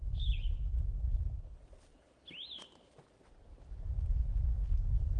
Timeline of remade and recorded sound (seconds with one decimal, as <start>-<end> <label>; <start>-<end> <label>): 0.0-1.6 remade; 1.6-4.7 recorded; 4.7-5.2 remade